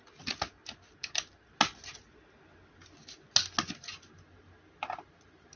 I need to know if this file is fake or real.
real